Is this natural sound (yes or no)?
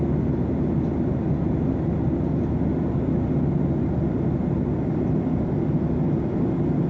yes